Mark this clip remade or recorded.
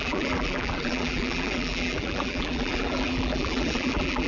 remade